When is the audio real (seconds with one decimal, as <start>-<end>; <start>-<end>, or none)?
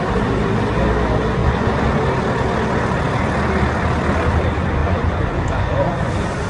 0.0-1.4; 2.0-4.8; 6.1-6.5